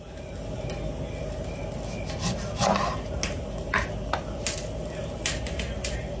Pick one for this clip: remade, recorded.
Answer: recorded